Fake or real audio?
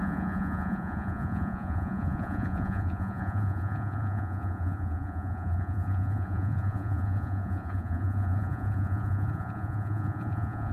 fake